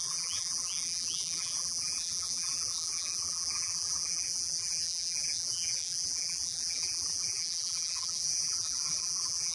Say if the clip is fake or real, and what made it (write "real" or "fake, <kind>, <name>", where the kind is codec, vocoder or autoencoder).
fake, vocoder, BigVGAN v2